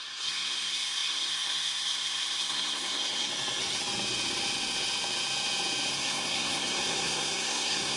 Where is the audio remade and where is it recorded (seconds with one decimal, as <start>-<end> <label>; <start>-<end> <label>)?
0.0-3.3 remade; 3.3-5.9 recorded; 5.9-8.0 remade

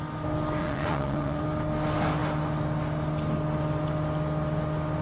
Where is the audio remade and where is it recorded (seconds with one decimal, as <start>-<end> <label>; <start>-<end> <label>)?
0.0-0.6 recorded; 0.6-1.4 remade; 1.4-5.0 recorded

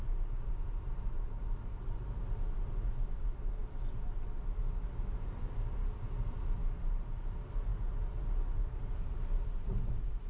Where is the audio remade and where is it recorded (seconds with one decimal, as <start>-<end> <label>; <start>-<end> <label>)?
0.0-10.3 recorded

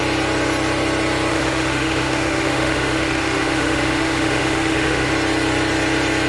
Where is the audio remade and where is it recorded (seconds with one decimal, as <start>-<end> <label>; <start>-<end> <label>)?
0.0-1.3 recorded; 1.3-5.1 remade; 5.1-6.3 recorded

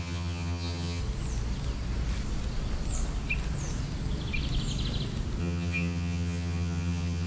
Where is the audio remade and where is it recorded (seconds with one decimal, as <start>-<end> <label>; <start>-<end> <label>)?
0.0-1.0 remade; 1.0-5.4 recorded; 5.4-7.3 remade

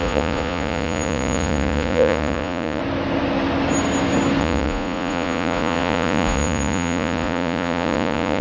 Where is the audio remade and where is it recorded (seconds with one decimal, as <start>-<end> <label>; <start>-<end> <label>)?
0.0-2.8 remade; 2.8-4.4 recorded; 4.4-8.4 remade

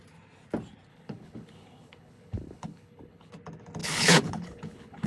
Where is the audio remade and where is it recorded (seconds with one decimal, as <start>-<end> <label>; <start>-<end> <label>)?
0.0-0.9 recorded; 0.9-3.3 remade; 3.3-3.8 recorded; 3.8-5.1 remade